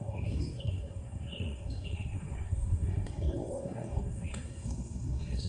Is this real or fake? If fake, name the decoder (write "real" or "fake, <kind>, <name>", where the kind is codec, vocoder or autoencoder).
fake, codec, SNAC